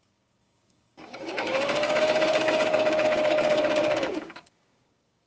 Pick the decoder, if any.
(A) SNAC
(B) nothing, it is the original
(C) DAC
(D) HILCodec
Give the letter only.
C